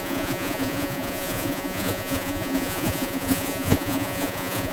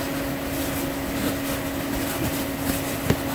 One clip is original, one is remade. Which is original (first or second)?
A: second